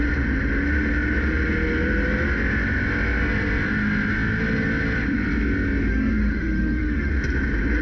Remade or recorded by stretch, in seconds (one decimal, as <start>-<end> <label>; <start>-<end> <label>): 0.0-5.9 recorded; 5.9-7.1 remade; 7.1-7.8 recorded